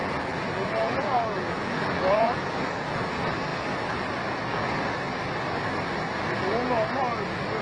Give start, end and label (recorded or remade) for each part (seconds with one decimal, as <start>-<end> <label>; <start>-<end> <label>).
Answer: 0.0-3.1 remade; 3.1-7.6 recorded